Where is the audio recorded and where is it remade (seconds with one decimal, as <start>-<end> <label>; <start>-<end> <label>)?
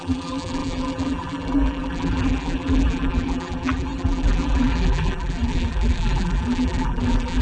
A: 0.0-7.4 remade